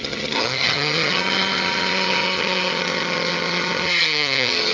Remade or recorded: remade